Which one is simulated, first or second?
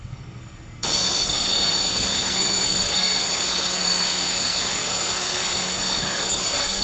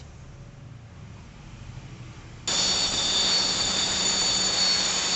first